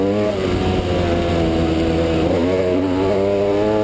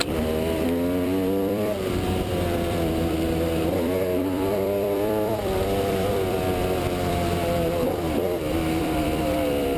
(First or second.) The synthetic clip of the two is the second